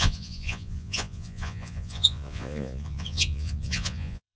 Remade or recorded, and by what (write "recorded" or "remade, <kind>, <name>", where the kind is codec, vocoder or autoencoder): remade, vocoder, Vocos